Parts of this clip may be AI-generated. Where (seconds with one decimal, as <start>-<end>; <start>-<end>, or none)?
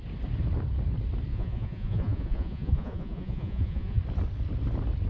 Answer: 1.3-4.0